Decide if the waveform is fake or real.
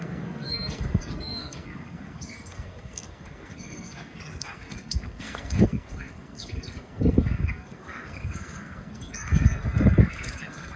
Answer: fake